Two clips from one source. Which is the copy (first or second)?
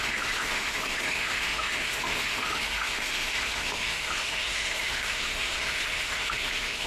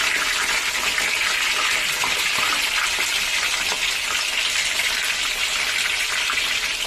first